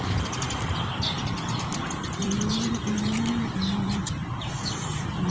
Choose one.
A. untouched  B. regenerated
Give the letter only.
B